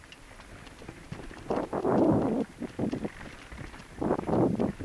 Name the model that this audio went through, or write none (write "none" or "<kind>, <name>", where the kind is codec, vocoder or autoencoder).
vocoder, BigVGAN v2